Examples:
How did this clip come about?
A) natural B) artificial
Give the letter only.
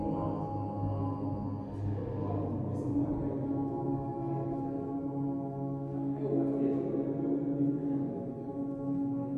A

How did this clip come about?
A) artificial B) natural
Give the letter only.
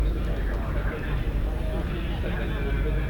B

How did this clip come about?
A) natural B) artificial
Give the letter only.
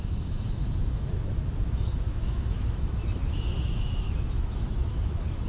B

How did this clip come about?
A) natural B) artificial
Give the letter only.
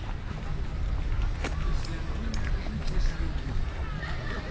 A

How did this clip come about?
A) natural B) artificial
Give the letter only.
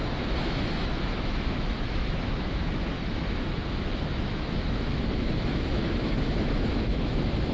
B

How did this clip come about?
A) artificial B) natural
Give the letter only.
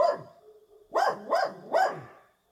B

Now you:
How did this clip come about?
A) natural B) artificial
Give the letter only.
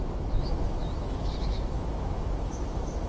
B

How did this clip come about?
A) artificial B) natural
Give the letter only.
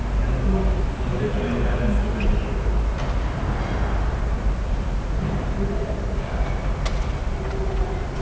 B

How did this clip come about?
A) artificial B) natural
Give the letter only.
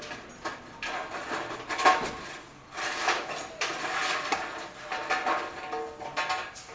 B